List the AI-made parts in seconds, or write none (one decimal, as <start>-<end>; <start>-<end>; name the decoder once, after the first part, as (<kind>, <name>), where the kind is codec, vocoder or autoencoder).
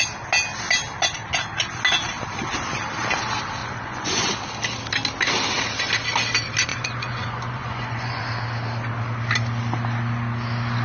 3.6-4.3 (vocoder, Vocos); 6.7-8.2